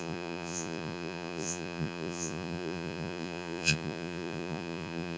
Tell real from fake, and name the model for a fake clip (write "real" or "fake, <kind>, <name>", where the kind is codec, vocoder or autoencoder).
fake, vocoder, Vocos